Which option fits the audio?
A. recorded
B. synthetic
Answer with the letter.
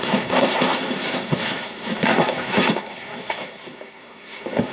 B